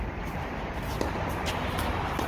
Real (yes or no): yes